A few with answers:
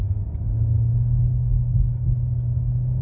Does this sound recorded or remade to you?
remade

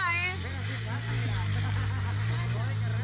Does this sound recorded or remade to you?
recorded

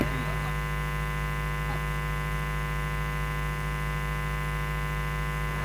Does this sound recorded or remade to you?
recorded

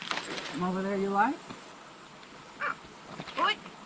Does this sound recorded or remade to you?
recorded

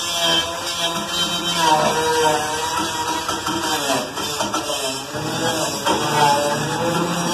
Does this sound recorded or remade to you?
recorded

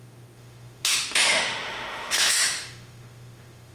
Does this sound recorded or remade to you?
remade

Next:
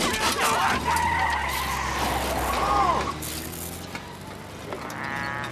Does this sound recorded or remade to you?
recorded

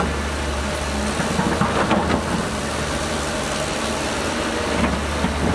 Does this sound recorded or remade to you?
recorded